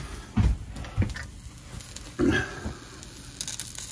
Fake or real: real